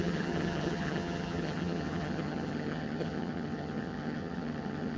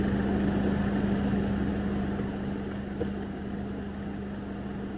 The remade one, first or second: first